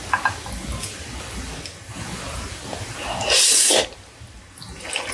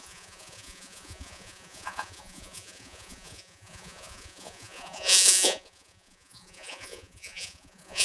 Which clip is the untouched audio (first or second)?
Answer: first